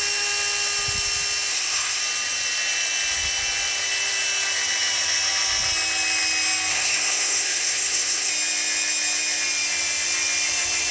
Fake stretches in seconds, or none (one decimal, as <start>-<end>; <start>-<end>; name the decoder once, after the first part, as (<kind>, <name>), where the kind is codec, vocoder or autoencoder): 1.5-2.0 (codec, SNAC); 6.7-8.3